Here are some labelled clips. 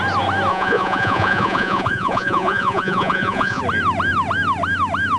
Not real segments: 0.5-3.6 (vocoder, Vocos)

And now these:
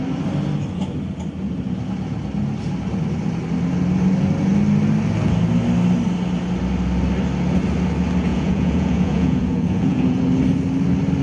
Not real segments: 8.3-10.2 (vocoder, Vocos)

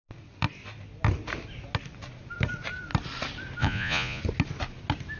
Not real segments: 3.6-4.2 (vocoder, Vocos)

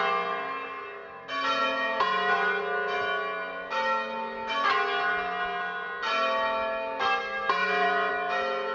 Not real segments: 1.6-2.6 (vocoder, Vocos); 7.6-8.1

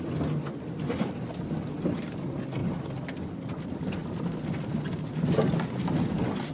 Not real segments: none